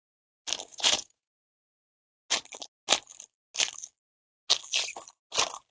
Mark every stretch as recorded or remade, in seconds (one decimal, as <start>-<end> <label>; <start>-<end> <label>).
0.0-0.7 recorded; 0.7-2.1 remade; 2.1-5.7 recorded